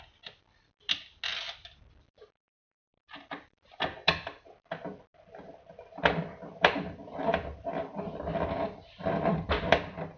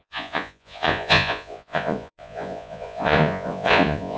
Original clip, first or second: first